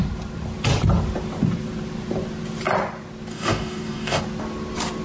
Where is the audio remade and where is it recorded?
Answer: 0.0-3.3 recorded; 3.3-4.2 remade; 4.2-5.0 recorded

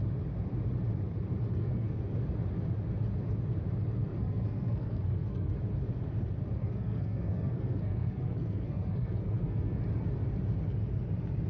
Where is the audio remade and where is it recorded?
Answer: 0.0-1.5 recorded; 1.5-2.0 remade; 2.0-4.1 recorded; 4.1-5.6 remade; 5.6-6.6 recorded; 6.6-9.8 remade; 9.8-11.5 recorded

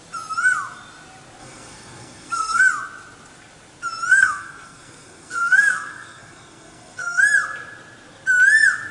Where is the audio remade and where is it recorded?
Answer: 0.0-1.4 recorded; 1.4-2.6 remade; 2.6-4.1 recorded; 4.1-7.2 remade; 7.2-8.9 recorded

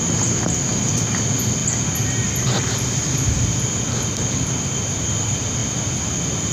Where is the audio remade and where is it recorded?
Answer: 0.0-6.5 recorded